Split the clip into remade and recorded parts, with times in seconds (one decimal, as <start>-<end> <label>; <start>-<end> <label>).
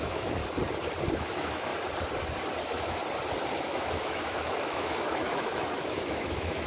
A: 0.0-0.4 remade; 0.4-1.1 recorded; 1.1-1.7 remade; 1.7-2.6 recorded; 2.6-3.0 remade; 3.0-3.5 recorded; 3.5-6.7 remade